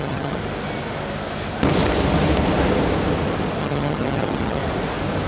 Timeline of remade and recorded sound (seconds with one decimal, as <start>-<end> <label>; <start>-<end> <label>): 0.0-0.4 remade; 0.4-3.6 recorded; 3.6-4.6 remade; 4.6-5.3 recorded